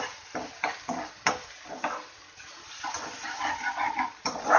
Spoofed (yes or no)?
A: no